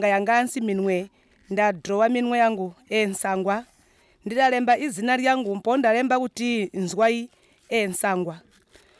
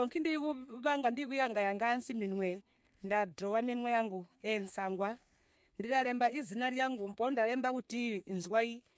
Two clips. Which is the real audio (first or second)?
first